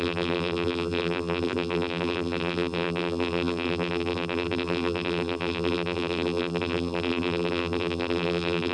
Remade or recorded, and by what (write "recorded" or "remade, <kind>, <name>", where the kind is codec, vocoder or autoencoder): remade, vocoder, BigVGAN v2